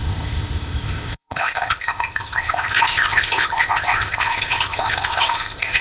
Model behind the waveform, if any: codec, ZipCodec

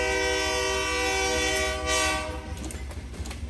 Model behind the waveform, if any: none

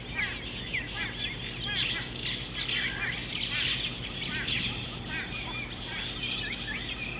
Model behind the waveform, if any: none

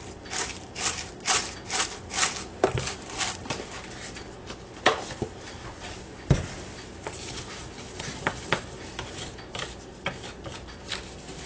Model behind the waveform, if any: none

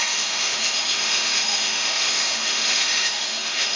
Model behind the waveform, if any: autoencoder, DAC-VAE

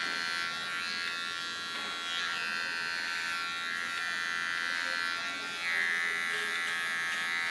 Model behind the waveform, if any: none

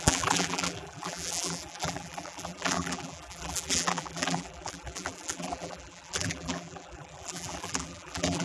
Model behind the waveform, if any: vocoder, BigVGAN v2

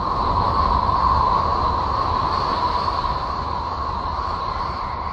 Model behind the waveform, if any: none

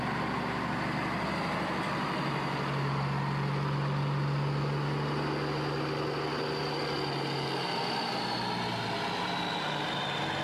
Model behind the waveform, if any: none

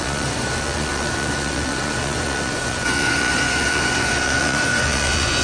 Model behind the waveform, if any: vocoder, Vocos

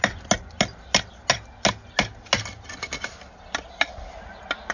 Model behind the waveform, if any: none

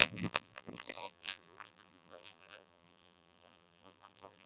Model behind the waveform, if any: vocoder, BigVGAN v2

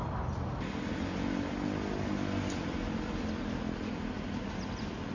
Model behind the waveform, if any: none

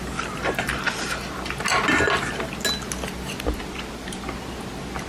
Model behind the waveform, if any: none